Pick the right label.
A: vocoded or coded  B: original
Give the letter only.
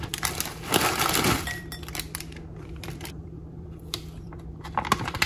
A